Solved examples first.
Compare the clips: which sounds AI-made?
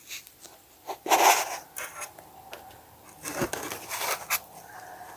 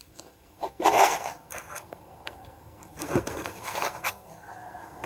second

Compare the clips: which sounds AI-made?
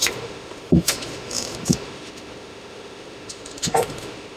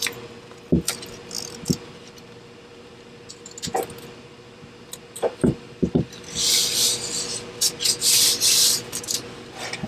first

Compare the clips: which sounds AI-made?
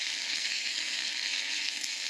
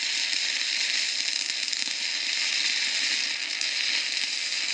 first